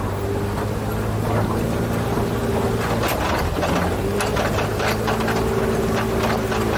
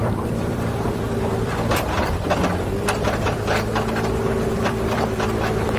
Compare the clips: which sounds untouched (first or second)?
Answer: first